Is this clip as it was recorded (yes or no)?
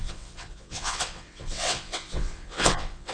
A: no